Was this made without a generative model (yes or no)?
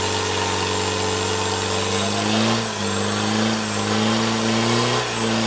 yes